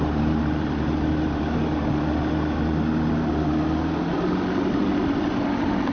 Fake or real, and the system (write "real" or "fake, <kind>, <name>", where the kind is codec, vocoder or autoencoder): real